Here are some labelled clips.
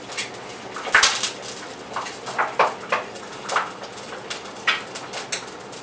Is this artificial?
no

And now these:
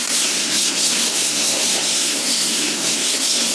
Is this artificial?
yes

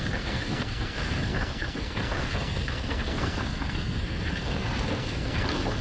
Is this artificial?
yes